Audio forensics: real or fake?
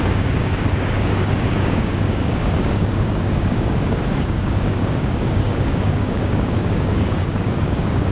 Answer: fake